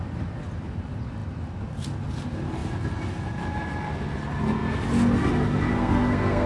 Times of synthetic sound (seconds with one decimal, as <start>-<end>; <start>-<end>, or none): 5.7-6.5